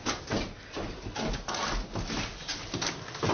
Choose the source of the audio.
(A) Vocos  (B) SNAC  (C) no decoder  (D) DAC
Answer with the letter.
C